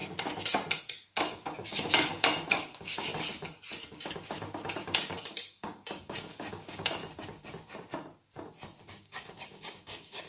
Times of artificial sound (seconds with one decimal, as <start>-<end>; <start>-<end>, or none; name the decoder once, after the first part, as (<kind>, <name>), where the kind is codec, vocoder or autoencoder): 0.8-3.1 (codec, DAC); 3.9-7.0; 8.9-10.3